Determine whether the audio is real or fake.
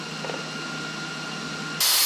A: real